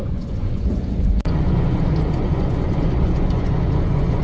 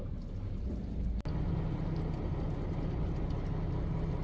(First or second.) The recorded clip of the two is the second